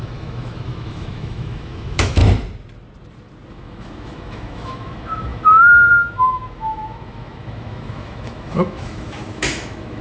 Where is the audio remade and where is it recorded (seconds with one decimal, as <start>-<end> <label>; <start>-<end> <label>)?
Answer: 0.0-2.2 remade; 2.2-3.5 recorded; 3.5-10.0 remade